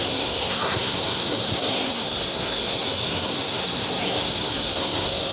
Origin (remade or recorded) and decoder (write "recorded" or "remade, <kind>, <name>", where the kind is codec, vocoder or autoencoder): remade, codec, SNAC